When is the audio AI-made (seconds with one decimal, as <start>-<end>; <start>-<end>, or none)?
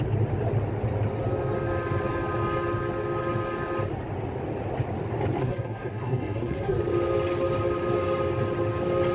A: 5.4-6.8